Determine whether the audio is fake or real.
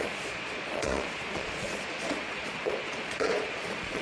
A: fake